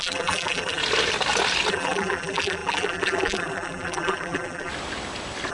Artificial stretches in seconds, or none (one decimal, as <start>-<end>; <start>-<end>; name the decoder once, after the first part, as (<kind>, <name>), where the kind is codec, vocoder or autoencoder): 0.0-0.8 (vocoder, BigVGAN v2); 1.7-4.7